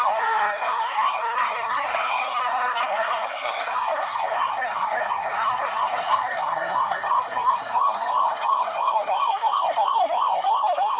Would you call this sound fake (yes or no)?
yes